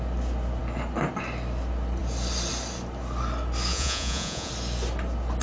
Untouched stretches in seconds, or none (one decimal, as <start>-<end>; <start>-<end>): 0.0-3.7; 4.5-5.4